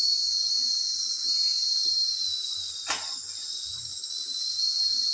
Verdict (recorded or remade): recorded